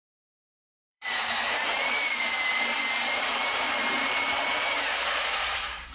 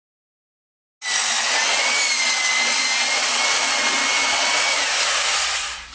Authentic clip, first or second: second